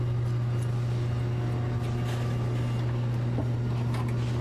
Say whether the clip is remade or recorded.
recorded